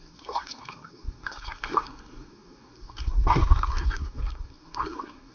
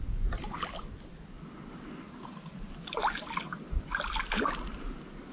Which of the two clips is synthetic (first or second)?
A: first